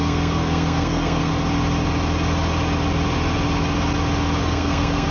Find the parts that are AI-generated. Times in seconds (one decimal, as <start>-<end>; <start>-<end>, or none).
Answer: 0.0-1.3; 4.4-5.1